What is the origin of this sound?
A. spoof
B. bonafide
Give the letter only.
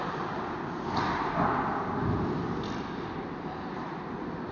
B